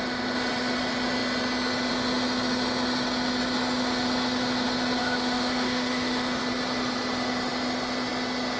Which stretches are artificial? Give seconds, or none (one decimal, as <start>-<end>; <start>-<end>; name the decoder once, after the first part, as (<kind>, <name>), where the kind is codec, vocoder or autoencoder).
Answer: 5.0-6.4 (autoencoder, DAC-VAE)